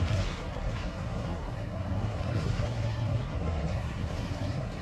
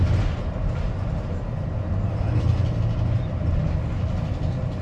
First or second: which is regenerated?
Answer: first